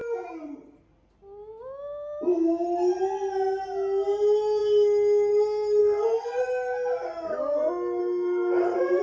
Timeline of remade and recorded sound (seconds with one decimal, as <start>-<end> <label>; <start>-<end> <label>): 0.0-5.8 recorded; 5.8-6.4 remade; 6.4-8.0 recorded; 8.0-9.0 remade